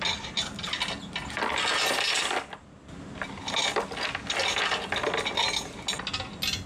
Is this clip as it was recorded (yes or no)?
yes